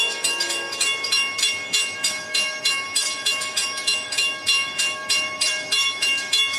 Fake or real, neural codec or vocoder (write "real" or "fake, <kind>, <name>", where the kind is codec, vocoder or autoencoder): fake, autoencoder, DAC-VAE